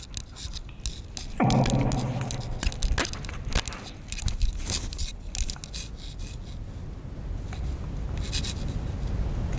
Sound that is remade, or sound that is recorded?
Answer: recorded